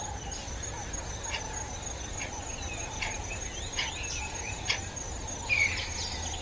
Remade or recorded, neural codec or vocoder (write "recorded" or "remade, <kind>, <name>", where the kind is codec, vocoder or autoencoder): recorded